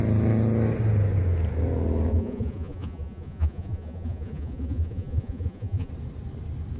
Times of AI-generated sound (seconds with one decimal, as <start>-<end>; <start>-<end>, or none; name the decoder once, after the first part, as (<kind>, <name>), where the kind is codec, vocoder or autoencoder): 2.1-5.9 (vocoder, Vocos)